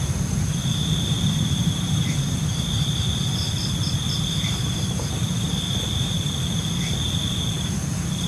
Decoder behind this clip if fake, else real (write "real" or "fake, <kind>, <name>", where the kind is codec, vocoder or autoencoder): fake, vocoder, BigVGAN v2